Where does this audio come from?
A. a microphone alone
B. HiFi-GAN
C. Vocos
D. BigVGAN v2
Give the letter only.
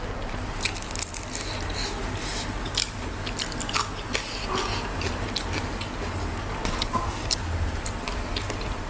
A